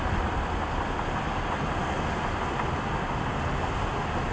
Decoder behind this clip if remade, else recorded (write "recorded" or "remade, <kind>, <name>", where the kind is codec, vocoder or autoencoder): recorded